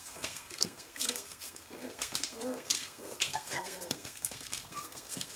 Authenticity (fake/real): fake